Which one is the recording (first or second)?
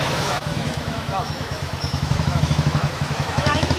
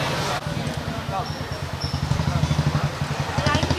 second